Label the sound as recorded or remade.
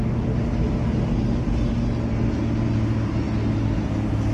recorded